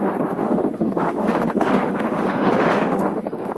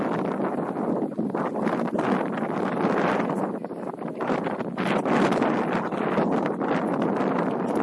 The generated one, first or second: first